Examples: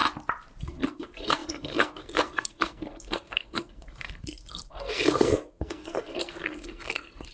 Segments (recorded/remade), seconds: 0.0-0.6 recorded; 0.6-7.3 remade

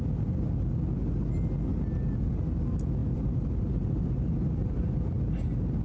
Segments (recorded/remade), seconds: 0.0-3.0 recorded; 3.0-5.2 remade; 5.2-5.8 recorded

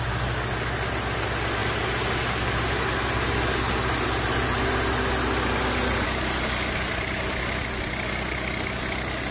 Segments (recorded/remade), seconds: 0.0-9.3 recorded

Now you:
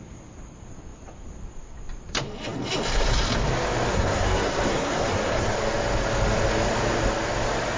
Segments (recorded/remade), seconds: 0.0-3.9 recorded; 3.9-5.5 remade; 5.5-7.8 recorded

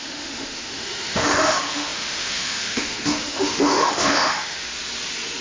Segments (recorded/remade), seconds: 0.0-4.7 remade; 4.7-5.4 recorded

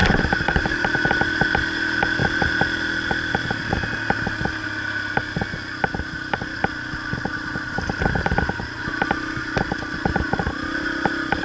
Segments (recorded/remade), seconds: 0.0-11.4 recorded

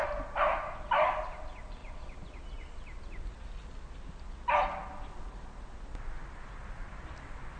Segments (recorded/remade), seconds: 0.0-7.6 recorded

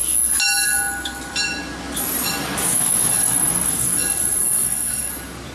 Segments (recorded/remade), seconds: 0.0-4.4 recorded; 4.4-5.1 remade; 5.1-5.5 recorded